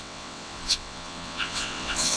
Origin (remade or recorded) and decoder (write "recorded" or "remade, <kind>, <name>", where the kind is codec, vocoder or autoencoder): remade, vocoder, WaveNeXt